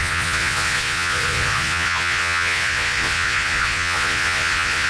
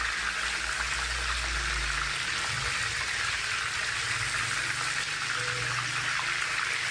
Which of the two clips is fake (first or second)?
first